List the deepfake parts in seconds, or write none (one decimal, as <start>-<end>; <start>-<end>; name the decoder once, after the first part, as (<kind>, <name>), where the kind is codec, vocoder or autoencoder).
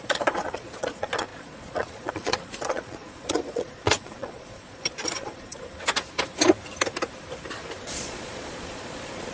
0.0-5.5 (vocoder, Vocos); 7.8-9.3